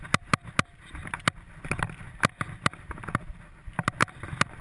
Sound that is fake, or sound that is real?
real